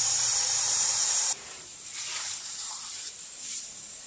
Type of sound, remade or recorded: remade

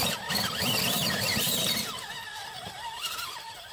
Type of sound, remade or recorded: recorded